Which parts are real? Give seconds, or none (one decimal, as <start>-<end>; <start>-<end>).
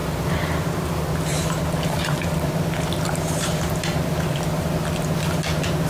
0.9-1.3; 4.7-5.9